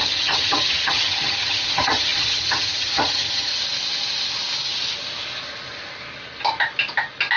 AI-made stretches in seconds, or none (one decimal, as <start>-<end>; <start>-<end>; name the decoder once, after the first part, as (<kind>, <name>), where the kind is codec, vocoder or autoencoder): 0.0-3.5 (vocoder, HiFi-GAN)